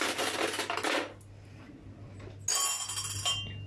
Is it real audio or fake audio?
real